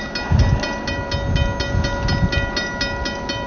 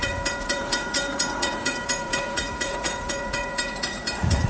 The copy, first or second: second